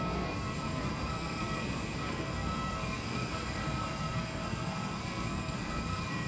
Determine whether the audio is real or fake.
fake